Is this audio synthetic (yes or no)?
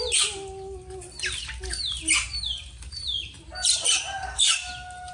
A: no